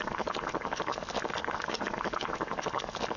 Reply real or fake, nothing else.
fake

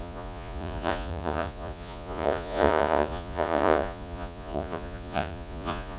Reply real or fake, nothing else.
fake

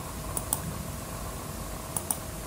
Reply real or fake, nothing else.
real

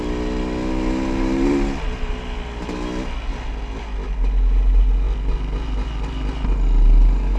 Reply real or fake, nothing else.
real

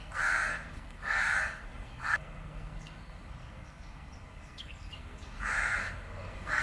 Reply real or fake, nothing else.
fake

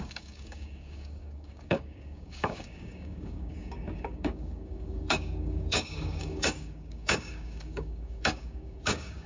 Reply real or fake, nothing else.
fake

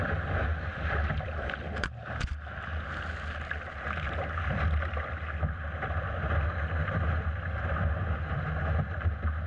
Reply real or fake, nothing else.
real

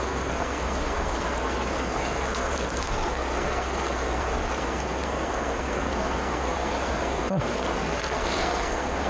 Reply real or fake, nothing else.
fake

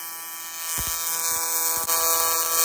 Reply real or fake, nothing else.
real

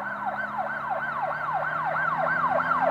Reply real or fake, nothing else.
real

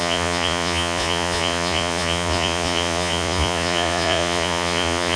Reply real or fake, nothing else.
fake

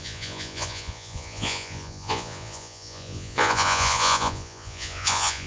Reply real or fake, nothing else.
fake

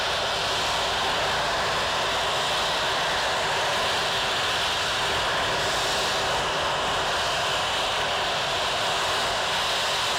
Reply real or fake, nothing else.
real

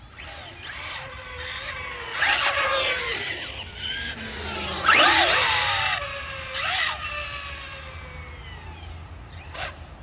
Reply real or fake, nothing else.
real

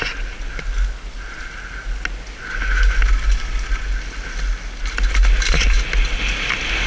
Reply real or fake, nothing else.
real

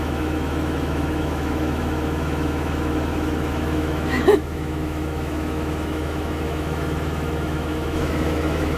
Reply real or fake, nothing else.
fake